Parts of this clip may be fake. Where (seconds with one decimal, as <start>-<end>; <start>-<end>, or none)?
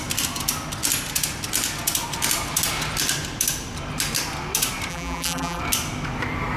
4.9-5.6